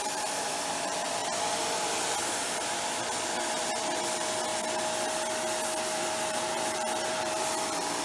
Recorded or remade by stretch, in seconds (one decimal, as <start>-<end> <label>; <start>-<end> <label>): 0.0-1.2 remade; 1.2-3.8 recorded; 3.8-4.5 remade; 4.5-5.8 recorded; 5.8-8.0 remade